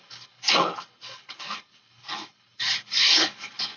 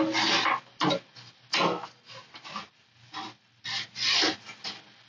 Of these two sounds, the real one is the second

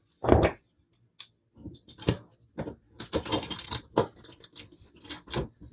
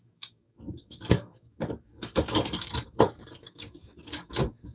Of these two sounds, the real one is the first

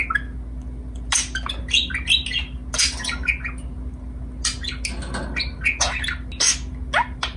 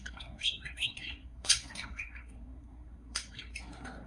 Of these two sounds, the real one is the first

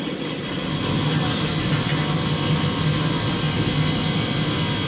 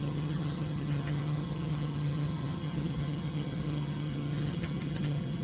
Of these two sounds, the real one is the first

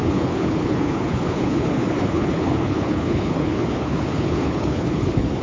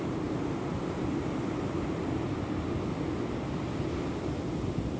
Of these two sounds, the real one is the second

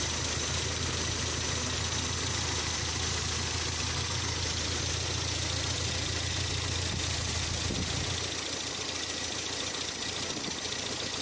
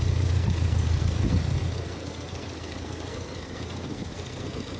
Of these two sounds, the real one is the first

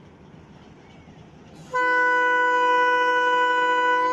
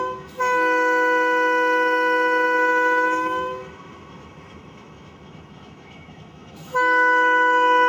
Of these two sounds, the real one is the first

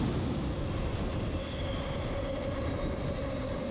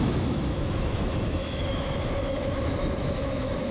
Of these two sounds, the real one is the first